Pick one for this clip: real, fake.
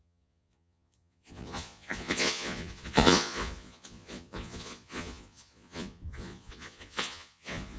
fake